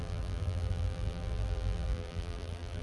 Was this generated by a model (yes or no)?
yes